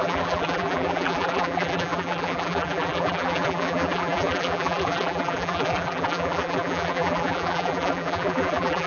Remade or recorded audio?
remade